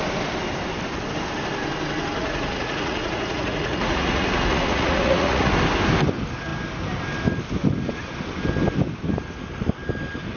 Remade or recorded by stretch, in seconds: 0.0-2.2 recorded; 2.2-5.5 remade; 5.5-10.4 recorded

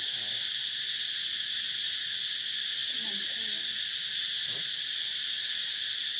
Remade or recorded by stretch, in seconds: 0.0-1.2 recorded; 1.2-2.2 remade; 2.2-6.2 recorded